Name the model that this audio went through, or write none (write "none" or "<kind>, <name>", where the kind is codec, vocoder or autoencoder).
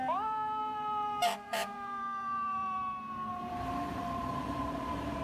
vocoder, BigVGAN v2